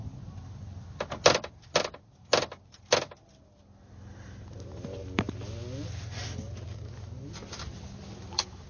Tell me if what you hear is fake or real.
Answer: real